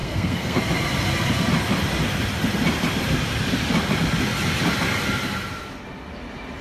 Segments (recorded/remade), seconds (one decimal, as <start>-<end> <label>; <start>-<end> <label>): 0.0-0.6 remade; 0.6-6.6 recorded